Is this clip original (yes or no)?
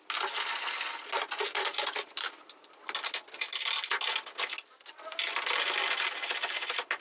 yes